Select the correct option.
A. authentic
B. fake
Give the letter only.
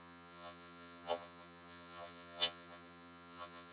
B